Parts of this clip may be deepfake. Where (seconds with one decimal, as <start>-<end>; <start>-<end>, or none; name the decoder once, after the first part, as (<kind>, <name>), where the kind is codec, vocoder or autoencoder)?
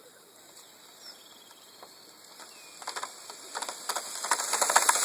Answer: none